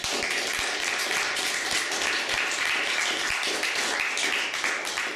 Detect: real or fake real